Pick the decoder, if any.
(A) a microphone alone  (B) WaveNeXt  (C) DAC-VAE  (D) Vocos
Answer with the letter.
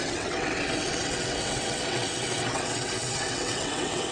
B